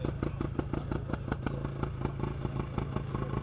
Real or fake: real